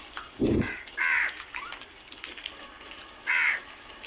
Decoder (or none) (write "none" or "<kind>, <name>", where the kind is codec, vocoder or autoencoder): none